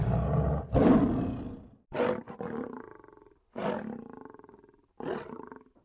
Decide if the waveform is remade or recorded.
recorded